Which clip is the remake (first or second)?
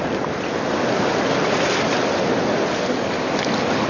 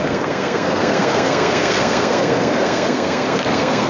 second